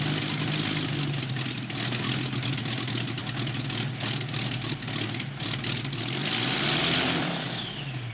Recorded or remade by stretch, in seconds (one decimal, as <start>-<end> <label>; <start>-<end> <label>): 0.0-8.1 recorded